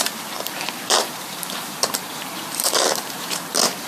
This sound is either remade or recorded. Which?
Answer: remade